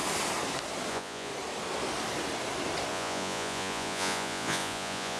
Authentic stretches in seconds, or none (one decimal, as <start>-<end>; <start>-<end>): 0.0-0.9; 1.3-2.9